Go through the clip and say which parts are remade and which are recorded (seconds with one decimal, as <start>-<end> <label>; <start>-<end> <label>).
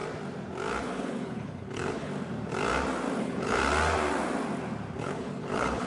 0.0-0.8 recorded; 0.8-2.1 remade; 2.1-3.2 recorded; 3.2-3.6 remade; 3.6-5.0 recorded; 5.0-5.9 remade